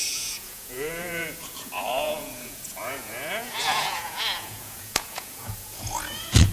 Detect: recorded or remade remade